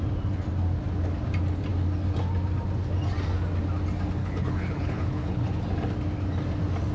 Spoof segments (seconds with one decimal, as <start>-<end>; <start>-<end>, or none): 4.2-5.6